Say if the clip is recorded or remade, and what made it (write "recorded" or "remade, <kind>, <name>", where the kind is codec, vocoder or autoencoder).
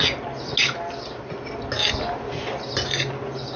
recorded